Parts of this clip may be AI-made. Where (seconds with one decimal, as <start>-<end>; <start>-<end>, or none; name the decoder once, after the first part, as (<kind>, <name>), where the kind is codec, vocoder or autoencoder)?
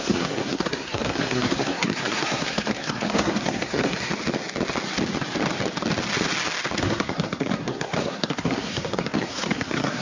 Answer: 0.0-4.1 (codec, SNAC); 6.8-10.0